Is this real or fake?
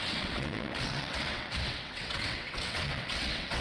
fake